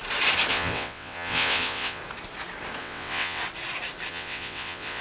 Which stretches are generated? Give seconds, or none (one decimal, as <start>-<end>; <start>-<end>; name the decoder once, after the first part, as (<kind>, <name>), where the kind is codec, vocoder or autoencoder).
0.5-2.0 (vocoder, WaveNeXt); 2.8-3.4; 4.1-5.0